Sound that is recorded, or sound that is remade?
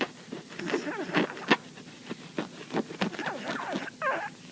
recorded